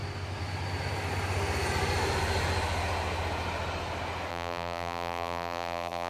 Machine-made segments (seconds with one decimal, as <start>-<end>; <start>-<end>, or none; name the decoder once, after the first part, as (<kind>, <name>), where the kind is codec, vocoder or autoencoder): 4.3-6.1 (vocoder, BigVGAN v2)